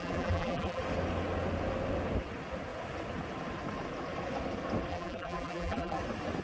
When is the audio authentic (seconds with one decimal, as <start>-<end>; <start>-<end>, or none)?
0.8-4.9; 6.0-6.4